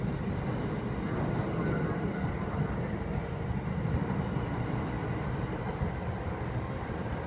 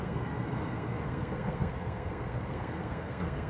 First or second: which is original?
first